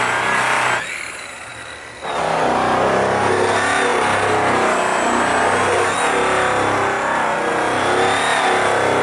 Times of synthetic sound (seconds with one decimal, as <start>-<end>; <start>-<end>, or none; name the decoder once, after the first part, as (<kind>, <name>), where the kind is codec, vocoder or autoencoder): none